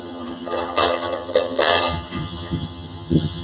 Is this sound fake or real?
fake